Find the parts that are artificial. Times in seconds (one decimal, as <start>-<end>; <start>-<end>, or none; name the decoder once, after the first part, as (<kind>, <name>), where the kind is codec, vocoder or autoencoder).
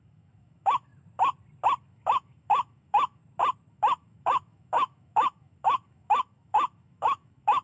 0.0-0.9 (autoencoder, DAC-VAE); 1.8-3.2; 3.7-7.6